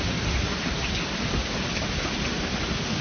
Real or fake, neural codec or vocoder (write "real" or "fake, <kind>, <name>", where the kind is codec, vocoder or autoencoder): real